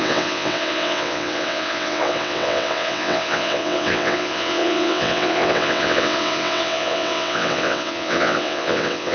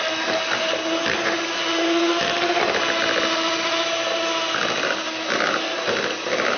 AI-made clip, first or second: first